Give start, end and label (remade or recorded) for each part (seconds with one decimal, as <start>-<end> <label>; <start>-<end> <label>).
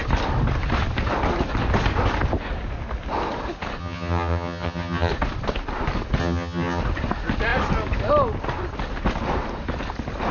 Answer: 0.0-3.8 recorded; 3.8-5.1 remade; 5.1-6.2 recorded; 6.2-6.8 remade; 6.8-10.3 recorded